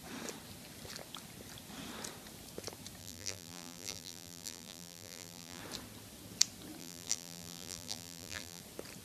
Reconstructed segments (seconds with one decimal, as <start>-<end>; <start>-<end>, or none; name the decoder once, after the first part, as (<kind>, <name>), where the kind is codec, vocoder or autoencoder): 3.0-5.6 (vocoder, BigVGAN v2); 6.8-8.6